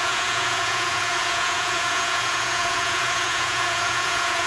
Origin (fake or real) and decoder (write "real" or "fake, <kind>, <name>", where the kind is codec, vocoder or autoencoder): fake, vocoder, Vocos